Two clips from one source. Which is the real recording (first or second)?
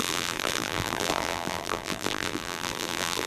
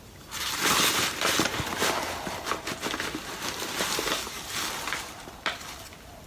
second